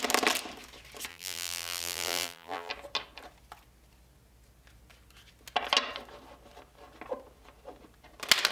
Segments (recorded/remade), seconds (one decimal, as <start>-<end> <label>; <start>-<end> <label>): 0.0-1.1 recorded; 1.1-2.7 remade; 2.7-8.5 recorded